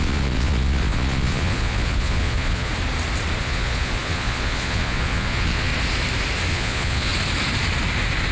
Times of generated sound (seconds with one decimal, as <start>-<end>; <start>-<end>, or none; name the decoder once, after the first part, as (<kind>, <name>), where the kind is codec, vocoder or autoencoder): 0.0-2.7 (vocoder, Vocos); 3.4-5.7; 6.5-7.1

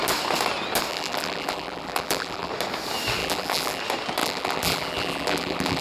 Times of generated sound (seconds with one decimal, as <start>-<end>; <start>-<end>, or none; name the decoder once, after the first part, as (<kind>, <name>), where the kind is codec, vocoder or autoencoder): 0.9-2.5 (vocoder, BigVGAN v2); 3.2-3.8; 4.2-5.8

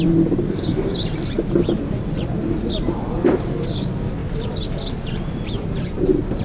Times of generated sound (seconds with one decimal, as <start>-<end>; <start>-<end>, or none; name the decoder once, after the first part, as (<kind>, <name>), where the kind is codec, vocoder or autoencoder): 0.0-4.2 (vocoder, BigVGAN v2); 4.9-6.4